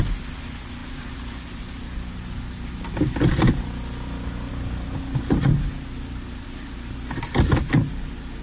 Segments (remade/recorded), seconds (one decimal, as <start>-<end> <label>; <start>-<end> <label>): 0.0-8.4 recorded